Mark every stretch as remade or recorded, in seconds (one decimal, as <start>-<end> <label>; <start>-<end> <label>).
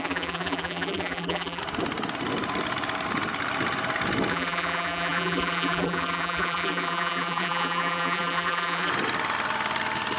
0.0-1.6 remade; 1.6-4.3 recorded; 4.3-8.9 remade; 8.9-10.2 recorded